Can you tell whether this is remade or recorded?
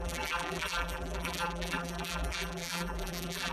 remade